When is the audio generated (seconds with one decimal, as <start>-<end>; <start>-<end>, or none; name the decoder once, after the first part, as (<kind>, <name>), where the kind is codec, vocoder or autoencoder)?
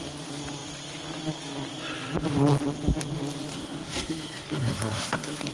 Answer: 3.5-5.5 (codec, SNAC)